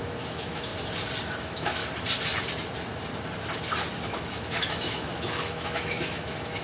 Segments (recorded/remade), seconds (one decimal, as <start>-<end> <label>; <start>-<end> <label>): 0.0-0.7 remade; 0.7-1.4 recorded; 1.4-1.8 remade; 1.8-4.1 recorded; 4.1-6.6 remade